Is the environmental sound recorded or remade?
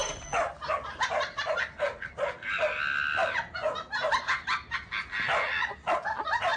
recorded